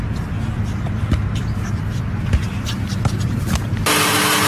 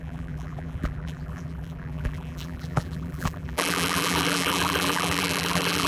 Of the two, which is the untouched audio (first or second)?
first